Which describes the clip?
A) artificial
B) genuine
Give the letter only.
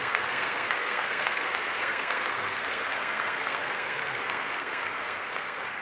A